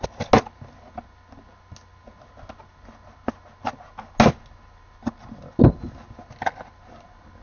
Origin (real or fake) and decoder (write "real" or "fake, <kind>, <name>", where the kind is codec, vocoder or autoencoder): real